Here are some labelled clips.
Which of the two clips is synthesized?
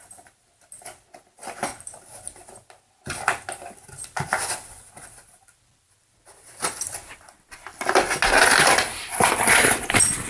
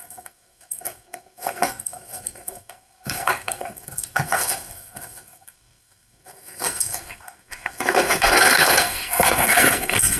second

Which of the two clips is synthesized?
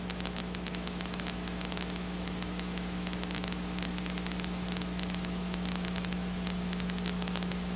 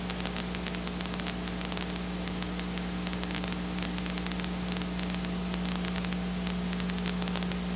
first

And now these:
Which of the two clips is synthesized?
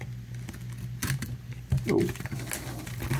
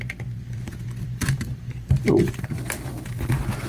second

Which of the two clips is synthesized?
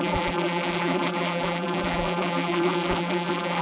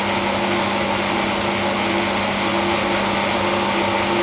first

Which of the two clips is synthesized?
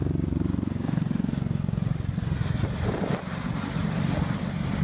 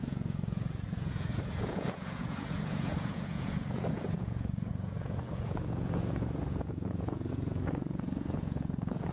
second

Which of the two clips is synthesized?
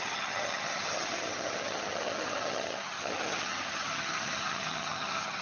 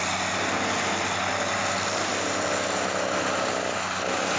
first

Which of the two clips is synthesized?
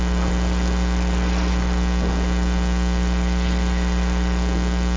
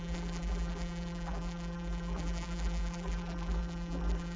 second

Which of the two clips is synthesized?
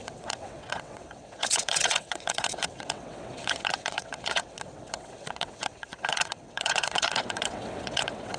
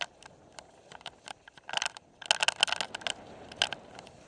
first